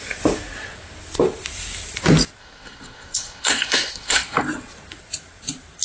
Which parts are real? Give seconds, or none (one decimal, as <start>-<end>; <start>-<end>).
0.0-2.4; 4.4-5.8